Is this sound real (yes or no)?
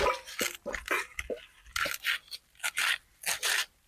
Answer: yes